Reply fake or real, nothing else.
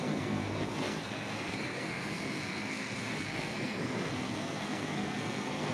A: fake